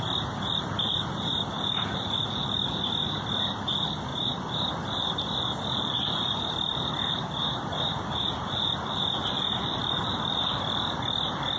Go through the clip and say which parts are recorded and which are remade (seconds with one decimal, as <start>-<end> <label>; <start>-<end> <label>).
0.0-11.6 recorded

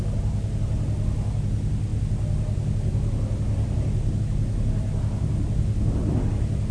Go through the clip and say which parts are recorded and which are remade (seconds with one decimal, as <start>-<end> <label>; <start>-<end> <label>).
0.0-6.7 recorded

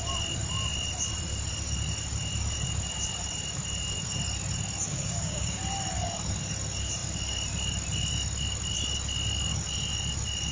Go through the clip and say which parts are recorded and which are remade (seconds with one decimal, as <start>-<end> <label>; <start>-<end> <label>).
0.0-4.9 recorded; 4.9-5.6 remade; 5.6-10.5 recorded